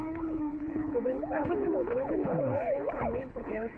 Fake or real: fake